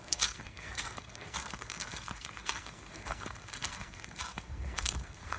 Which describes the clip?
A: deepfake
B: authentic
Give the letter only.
A